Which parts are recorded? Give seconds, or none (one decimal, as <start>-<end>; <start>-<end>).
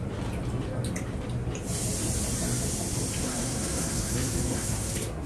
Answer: 0.0-3.2